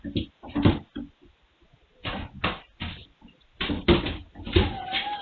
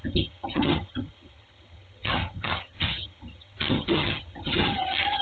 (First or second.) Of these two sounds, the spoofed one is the second